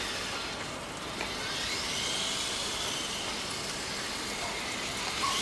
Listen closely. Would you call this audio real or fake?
real